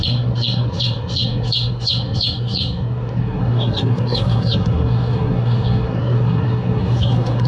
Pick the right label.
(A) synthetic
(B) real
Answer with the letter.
A